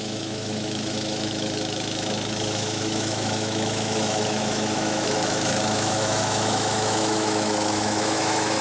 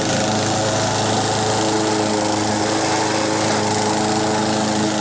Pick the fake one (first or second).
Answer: first